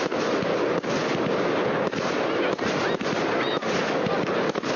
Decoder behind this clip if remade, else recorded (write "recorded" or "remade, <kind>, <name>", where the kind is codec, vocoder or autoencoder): recorded